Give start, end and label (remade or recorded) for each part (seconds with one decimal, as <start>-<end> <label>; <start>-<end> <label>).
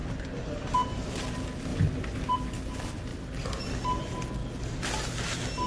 0.0-5.7 recorded